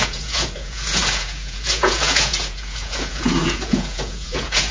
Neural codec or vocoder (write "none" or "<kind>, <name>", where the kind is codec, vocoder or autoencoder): vocoder, Vocos